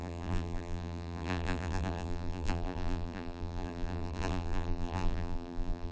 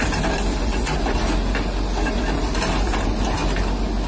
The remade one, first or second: first